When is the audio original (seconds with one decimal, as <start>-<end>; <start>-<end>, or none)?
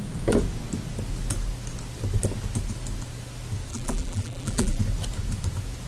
0.0-3.7; 4.8-5.9